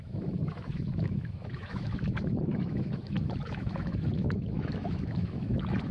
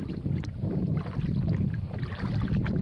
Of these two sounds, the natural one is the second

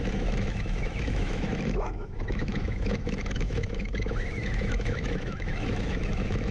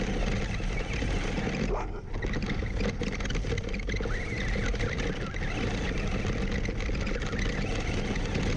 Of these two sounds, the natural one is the second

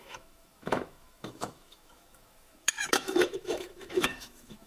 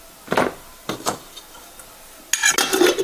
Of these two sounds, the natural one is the second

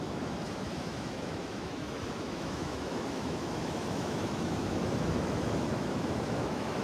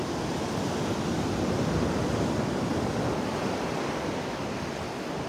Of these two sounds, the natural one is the second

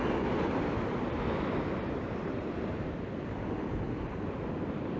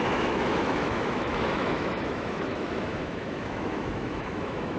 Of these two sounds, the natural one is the first